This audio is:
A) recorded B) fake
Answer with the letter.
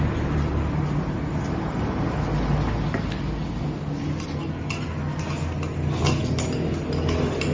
A